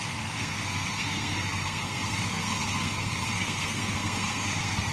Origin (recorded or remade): remade